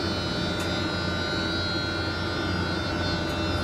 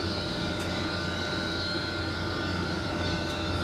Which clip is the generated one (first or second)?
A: second